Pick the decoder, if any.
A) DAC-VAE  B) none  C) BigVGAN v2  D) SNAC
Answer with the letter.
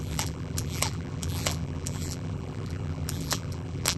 C